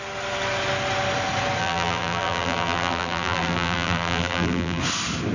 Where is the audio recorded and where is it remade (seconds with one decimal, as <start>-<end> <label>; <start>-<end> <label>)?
0.0-1.6 recorded; 1.6-4.8 remade; 4.8-5.3 recorded